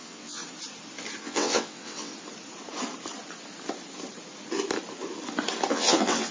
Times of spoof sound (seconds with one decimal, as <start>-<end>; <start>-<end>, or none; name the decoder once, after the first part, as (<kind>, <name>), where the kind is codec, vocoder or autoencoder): 0.0-0.4 (vocoder, WaveNeXt); 1.2-2.1; 5.7-6.3